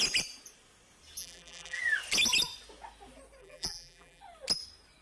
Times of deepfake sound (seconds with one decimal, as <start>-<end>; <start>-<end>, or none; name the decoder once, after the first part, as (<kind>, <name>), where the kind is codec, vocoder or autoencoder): 1.2-1.8 (vocoder, BigVGAN v2); 3.4-4.2